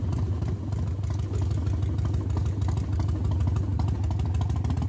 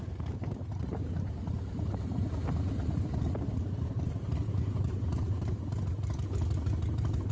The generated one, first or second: second